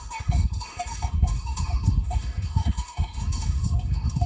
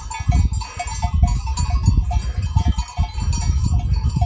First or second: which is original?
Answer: second